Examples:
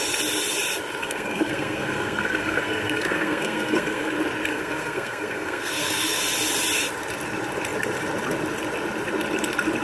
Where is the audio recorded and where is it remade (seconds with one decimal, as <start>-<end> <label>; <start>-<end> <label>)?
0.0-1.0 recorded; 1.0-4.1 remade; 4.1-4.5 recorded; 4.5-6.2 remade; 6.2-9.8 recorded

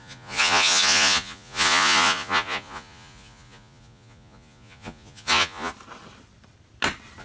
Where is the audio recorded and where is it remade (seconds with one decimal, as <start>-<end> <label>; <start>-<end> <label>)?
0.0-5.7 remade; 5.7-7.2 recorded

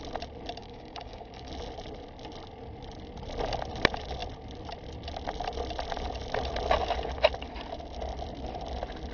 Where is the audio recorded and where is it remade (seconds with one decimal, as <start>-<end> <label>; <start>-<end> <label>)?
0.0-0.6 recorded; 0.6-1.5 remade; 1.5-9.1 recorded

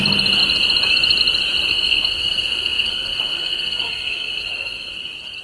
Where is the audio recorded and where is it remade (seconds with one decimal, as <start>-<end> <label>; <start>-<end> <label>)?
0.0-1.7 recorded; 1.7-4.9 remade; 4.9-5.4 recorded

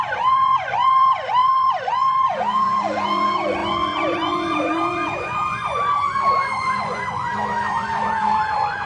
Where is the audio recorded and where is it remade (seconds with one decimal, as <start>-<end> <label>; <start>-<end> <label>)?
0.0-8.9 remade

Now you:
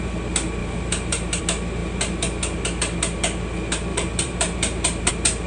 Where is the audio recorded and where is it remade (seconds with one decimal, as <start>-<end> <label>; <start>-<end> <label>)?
0.0-0.6 recorded; 0.6-1.4 remade; 1.4-3.9 recorded; 3.9-5.1 remade; 5.1-5.5 recorded

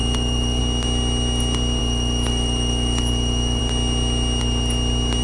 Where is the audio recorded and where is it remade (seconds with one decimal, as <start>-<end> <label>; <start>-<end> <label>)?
0.0-0.6 remade; 0.6-1.8 recorded; 1.8-3.6 remade; 3.6-5.2 recorded